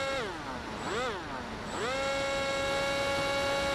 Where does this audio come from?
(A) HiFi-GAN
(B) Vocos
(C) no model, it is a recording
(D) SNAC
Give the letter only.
C